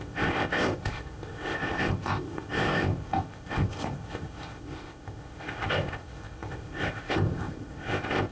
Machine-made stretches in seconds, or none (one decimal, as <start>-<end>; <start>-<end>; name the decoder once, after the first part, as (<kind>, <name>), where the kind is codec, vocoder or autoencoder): 0.0-8.3 (codec, ZipCodec)